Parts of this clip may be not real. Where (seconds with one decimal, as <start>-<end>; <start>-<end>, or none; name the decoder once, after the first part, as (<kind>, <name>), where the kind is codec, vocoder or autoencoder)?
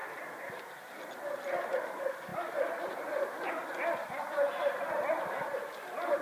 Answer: 0.0-0.7 (vocoder, BigVGAN v2)